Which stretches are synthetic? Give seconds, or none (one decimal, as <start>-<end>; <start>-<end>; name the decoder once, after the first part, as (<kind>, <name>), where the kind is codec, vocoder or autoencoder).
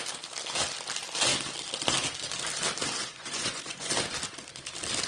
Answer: 3.0-3.9 (vocoder, Vocos)